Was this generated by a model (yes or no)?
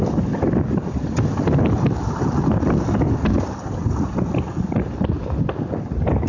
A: no